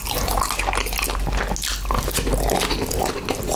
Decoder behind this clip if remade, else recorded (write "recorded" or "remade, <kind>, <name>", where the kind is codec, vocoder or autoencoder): recorded